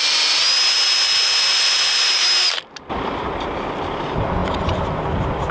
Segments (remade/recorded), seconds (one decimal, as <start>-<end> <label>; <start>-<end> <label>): 0.0-5.5 recorded

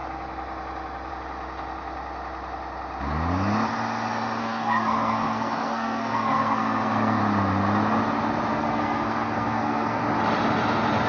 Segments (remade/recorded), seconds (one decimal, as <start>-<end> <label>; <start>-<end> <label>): 0.0-4.4 recorded; 4.4-7.2 remade; 7.2-8.5 recorded; 8.5-10.0 remade; 10.0-11.1 recorded

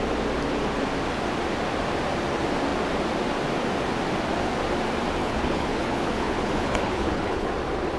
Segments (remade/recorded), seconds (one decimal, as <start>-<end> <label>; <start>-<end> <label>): 0.0-5.2 recorded; 5.2-7.5 remade; 7.5-8.0 recorded

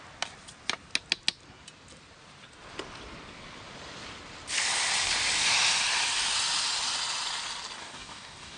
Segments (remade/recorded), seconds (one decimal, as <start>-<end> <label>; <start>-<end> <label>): 0.0-7.8 recorded; 7.8-8.6 remade

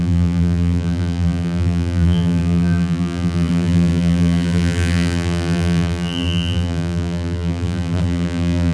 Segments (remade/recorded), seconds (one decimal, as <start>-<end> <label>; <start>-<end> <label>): 0.0-8.7 remade